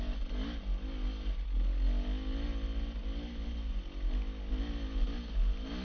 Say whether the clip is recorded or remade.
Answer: recorded